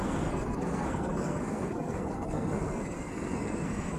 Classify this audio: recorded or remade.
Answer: remade